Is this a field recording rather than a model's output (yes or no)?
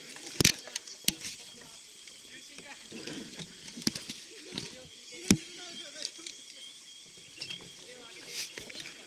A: yes